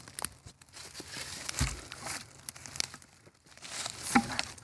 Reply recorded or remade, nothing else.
recorded